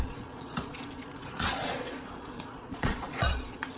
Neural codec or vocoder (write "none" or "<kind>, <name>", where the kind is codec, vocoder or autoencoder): vocoder, Vocos